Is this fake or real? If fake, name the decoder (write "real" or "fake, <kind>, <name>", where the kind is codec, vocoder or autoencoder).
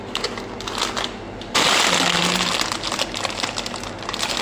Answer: real